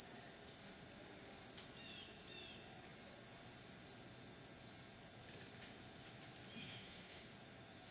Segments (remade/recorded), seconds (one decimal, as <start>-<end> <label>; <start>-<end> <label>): 0.0-6.6 recorded; 6.6-7.2 remade; 7.2-7.9 recorded